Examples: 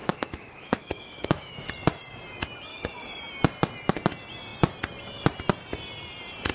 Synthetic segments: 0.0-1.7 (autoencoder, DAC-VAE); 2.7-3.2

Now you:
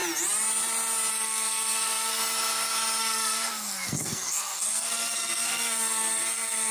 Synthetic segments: 1.1-2.2 (codec, SNAC); 3.0-6.7

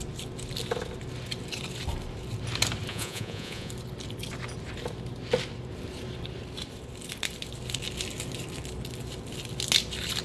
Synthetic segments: 2.9-3.7 (vocoder, Vocos)